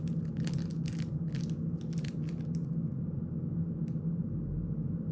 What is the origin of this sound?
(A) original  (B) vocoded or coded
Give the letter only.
A